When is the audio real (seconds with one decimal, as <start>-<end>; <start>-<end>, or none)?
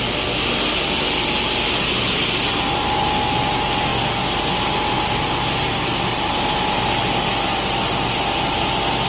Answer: 0.0-9.1